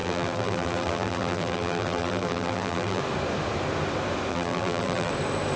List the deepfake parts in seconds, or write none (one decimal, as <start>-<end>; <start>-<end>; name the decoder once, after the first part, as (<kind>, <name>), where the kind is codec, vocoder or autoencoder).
0.0-3.0 (vocoder, BigVGAN v2); 4.3-5.1